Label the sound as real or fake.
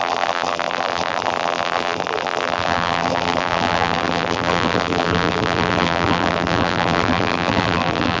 fake